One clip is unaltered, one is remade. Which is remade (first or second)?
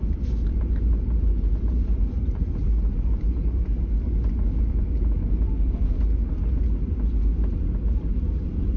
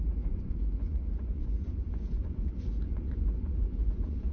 second